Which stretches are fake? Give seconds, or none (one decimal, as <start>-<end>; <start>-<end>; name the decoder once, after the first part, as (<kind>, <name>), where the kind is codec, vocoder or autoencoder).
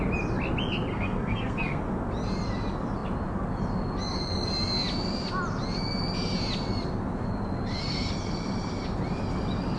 0.9-1.8 (codec, SNAC)